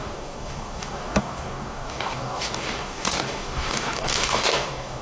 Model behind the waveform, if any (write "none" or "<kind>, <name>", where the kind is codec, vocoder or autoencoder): codec, DAC